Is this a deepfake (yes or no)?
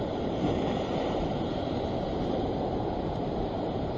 yes